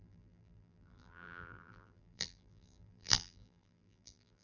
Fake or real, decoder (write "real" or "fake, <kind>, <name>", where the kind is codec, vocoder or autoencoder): fake, vocoder, BigVGAN v2